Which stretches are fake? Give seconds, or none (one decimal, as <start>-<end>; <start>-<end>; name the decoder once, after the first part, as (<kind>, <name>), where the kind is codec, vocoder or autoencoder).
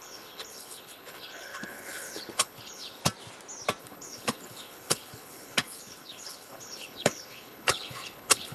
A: 0.0-3.0 (codec, HILCodec); 3.8-8.5